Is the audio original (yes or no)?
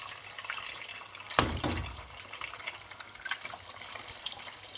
no